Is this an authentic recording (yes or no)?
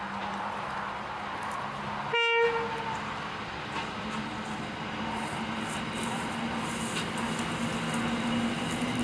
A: yes